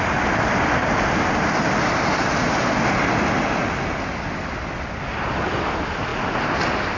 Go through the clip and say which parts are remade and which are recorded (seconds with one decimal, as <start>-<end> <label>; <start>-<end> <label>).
0.0-7.0 recorded